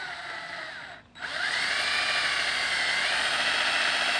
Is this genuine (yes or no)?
yes